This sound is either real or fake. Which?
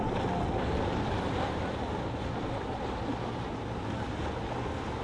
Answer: real